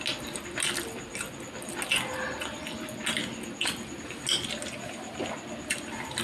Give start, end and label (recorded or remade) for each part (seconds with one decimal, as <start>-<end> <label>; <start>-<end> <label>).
0.0-6.2 recorded